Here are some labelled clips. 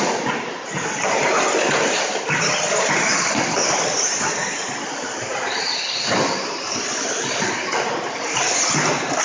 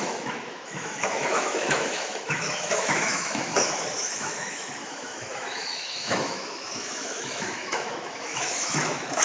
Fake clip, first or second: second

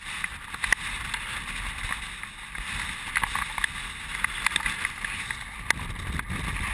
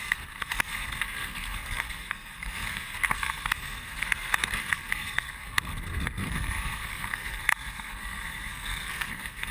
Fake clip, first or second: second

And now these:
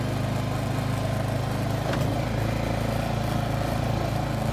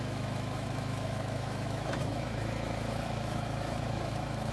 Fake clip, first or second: second